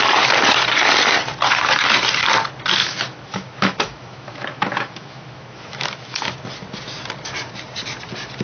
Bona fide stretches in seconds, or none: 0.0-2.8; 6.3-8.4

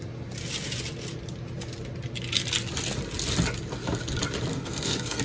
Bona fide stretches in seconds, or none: 0.0-4.5

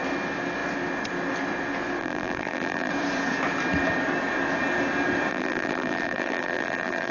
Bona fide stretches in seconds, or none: 0.0-2.0; 2.9-5.3

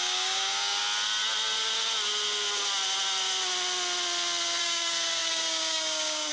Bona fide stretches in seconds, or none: 0.8-4.6

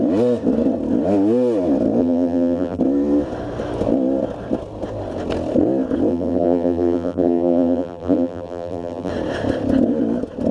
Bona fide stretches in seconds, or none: 0.0-2.0; 2.8-6.1; 9.1-10.5